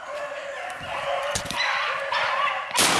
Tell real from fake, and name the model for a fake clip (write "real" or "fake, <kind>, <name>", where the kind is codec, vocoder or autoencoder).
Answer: fake, vocoder, BigVGAN v2